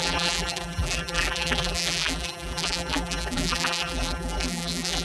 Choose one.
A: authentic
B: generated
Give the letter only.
B